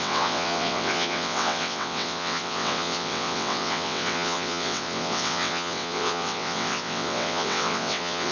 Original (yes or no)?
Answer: no